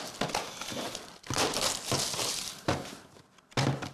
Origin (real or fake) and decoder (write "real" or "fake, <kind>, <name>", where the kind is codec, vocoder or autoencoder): real